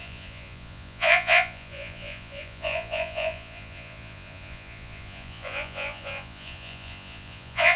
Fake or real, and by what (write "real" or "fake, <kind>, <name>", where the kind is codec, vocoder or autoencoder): fake, vocoder, Vocos